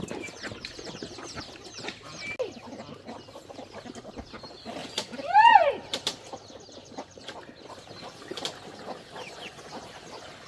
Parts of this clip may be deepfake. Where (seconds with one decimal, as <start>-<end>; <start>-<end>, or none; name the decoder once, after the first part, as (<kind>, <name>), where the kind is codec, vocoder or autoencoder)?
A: 4.8-5.7 (vocoder, Vocos); 6.8-7.4; 9.1-9.7